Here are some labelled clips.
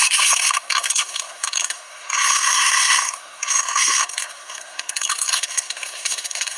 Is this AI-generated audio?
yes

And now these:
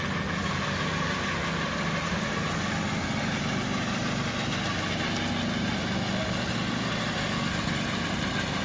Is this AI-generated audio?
no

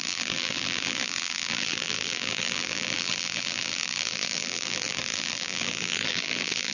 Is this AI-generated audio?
yes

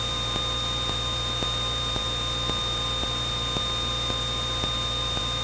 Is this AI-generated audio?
no